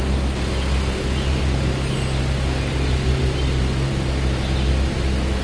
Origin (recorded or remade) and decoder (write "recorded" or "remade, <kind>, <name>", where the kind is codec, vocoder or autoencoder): recorded